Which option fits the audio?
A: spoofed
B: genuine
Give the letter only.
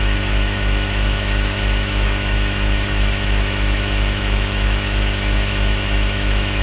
A